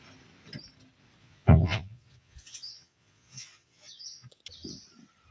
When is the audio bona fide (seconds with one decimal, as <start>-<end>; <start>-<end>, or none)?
0.0-1.2; 4.4-5.3